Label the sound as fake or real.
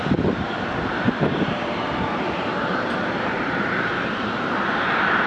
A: fake